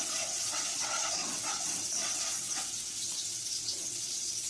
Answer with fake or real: fake